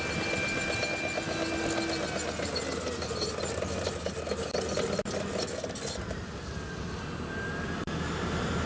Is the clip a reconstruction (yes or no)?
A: no